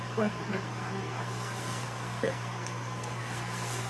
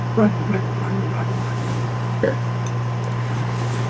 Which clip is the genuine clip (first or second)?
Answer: second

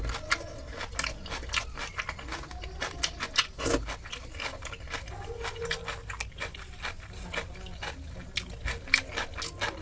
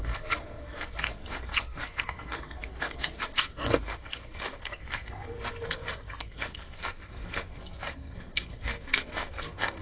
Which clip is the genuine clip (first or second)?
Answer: first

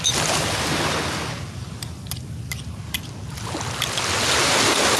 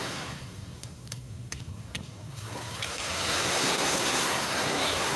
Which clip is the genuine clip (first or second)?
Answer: first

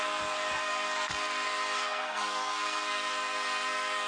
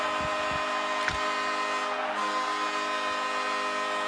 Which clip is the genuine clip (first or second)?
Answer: second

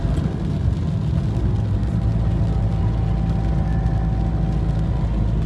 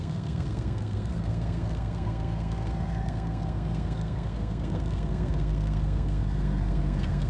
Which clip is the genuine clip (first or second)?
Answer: first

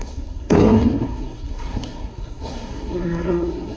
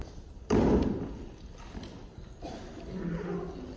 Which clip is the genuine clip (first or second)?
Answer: second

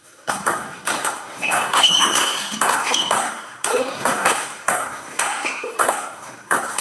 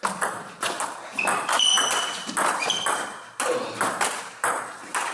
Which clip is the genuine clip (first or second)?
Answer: second